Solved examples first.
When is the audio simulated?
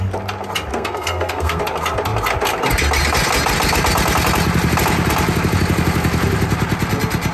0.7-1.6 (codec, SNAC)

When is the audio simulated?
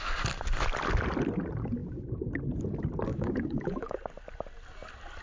3.1-4.0 (autoencoder, DAC-VAE)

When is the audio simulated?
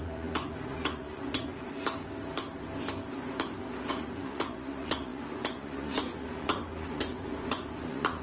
0.0-1.5 (vocoder, Vocos); 3.9-8.2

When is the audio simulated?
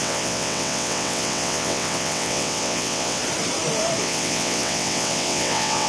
0.0-3.2 (vocoder, WaveNeXt); 4.0-5.9